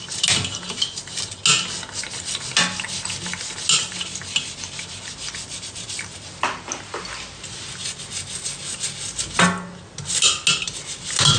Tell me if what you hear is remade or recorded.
recorded